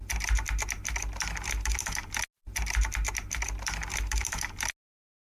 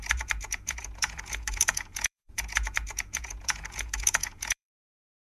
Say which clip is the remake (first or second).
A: second